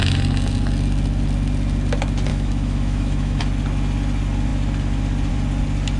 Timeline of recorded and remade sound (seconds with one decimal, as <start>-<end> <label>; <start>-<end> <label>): 0.0-2.3 recorded; 2.3-3.4 remade; 3.4-6.0 recorded